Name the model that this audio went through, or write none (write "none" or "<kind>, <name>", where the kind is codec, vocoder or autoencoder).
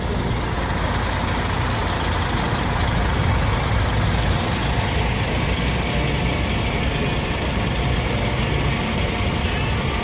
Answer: none